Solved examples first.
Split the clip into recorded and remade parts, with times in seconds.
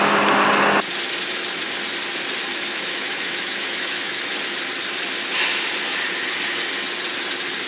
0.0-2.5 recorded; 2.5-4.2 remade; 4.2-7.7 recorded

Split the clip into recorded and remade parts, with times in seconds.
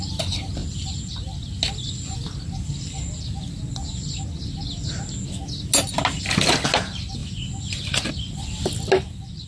0.0-9.5 recorded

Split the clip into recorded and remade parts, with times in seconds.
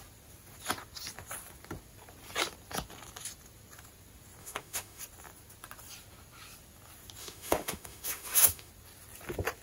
0.0-4.4 recorded; 4.4-5.0 remade; 5.0-7.2 recorded; 7.2-8.7 remade; 8.7-9.6 recorded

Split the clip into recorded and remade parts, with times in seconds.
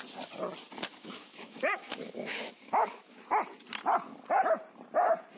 0.0-0.9 recorded; 0.9-3.2 remade; 3.2-5.4 recorded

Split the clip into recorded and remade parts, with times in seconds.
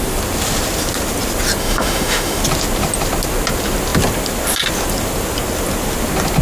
0.0-1.6 recorded; 1.6-2.4 remade; 2.4-6.4 recorded